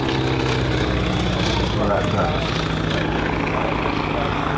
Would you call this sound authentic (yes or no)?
yes